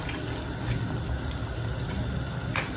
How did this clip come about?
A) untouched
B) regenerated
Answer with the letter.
A